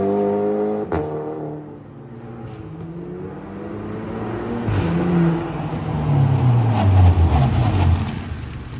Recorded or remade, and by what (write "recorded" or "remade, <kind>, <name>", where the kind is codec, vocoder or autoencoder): recorded